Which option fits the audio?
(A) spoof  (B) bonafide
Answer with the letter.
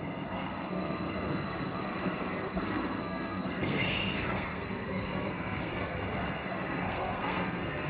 A